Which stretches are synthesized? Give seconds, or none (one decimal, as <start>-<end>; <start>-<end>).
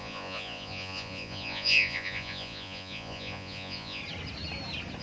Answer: 0.0-4.0